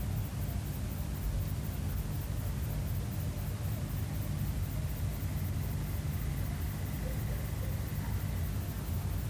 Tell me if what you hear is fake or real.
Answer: real